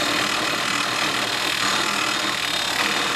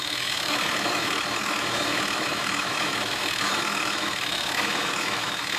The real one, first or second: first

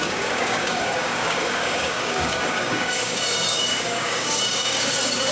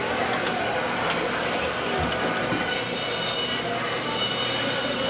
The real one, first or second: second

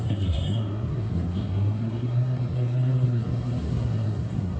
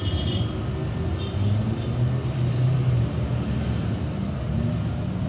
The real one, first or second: second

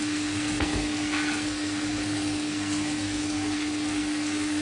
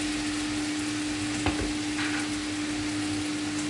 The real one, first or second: second